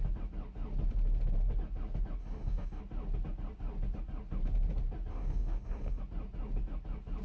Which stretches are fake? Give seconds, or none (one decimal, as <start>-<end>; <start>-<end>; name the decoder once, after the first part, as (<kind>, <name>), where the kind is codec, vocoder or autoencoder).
2.2-2.8 (codec, DAC); 5.1-6.0